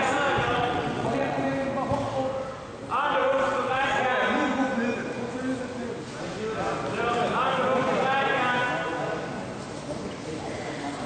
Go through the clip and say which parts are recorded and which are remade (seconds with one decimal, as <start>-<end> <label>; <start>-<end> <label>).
0.0-0.5 recorded; 0.5-1.4 remade; 1.4-3.2 recorded; 3.2-4.0 remade; 4.0-11.1 recorded